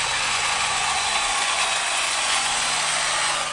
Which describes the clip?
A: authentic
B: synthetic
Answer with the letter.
B